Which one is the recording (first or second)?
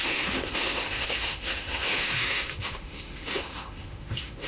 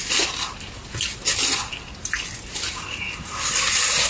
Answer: second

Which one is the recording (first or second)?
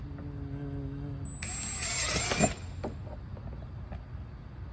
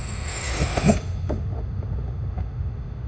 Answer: first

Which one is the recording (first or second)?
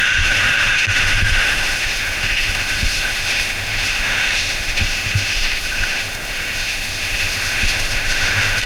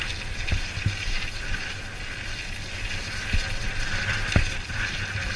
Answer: second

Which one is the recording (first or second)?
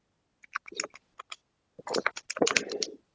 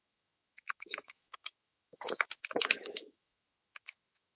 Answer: first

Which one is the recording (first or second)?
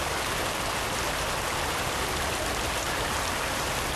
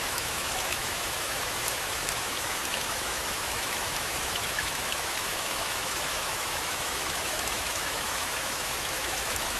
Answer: first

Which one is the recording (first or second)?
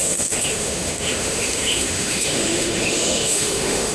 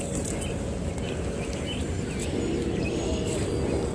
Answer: second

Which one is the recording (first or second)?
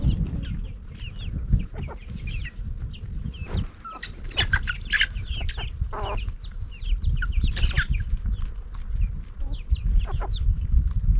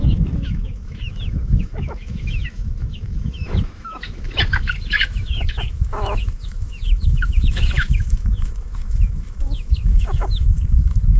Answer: first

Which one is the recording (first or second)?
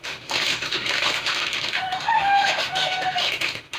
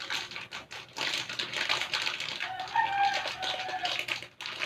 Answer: second